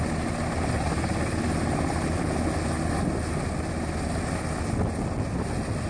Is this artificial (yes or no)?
no